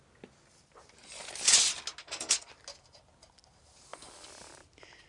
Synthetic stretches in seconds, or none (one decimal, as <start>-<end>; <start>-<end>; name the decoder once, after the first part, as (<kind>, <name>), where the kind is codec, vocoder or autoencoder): 2.0-2.5 (codec, SNAC)